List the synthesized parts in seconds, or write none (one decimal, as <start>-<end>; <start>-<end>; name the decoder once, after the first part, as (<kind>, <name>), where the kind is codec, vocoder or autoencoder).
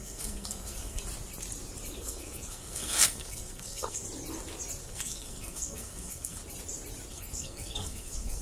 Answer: 0.0-1.0 (codec, SNAC); 2.0-4.0; 4.8-6.4; 7.1-8.4